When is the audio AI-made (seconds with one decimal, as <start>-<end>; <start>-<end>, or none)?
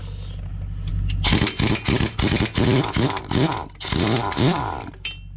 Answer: 2.6-3.2